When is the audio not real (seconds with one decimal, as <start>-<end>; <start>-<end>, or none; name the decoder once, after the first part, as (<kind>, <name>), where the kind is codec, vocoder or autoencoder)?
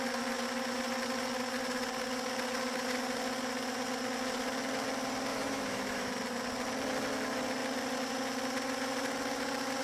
5.3-6.1 (autoencoder, DAC-VAE)